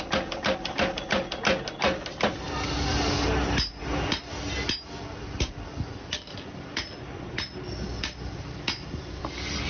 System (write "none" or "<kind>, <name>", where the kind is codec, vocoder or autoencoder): none